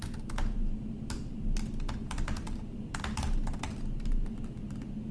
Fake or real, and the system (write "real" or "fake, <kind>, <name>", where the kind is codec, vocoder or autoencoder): real